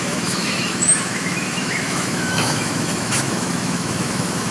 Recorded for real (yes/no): no